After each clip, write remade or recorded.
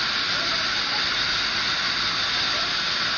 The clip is recorded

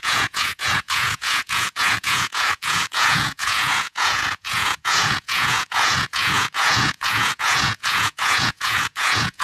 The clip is remade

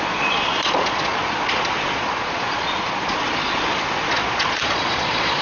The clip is remade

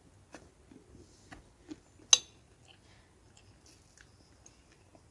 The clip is recorded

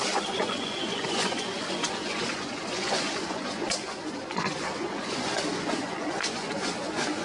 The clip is remade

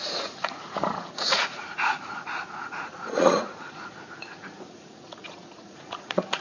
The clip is remade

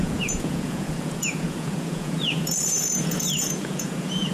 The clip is remade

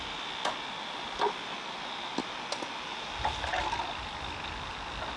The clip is recorded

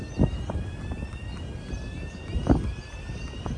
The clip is recorded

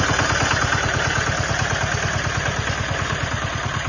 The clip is recorded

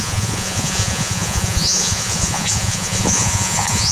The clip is remade